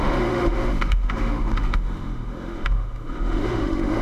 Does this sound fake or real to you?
fake